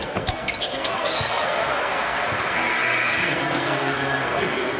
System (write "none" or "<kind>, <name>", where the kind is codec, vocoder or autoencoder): codec, SNAC